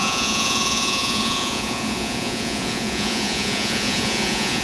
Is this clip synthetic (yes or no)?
yes